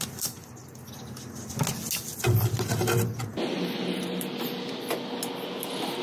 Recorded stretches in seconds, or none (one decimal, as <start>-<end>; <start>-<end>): 0.0-6.0